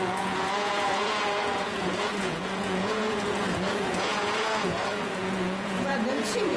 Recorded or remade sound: remade